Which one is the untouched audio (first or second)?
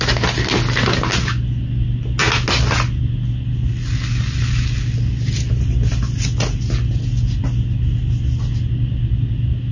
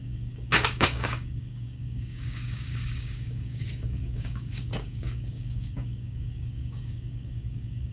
first